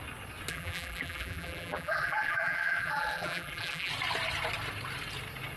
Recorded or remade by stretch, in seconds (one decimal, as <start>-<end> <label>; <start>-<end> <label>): 0.0-0.5 recorded; 0.5-3.9 remade; 3.9-5.6 recorded